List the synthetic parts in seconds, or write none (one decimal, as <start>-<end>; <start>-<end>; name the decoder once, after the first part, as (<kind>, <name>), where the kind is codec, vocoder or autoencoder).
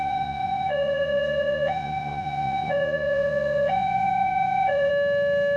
0.0-4.9 (vocoder, Vocos)